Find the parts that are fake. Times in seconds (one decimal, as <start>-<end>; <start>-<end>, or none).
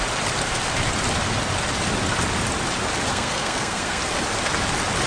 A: 3.1-4.0